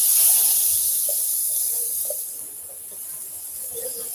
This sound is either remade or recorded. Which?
recorded